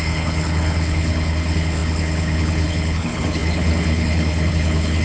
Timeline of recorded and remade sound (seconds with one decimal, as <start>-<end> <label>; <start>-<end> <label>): 0.0-5.0 remade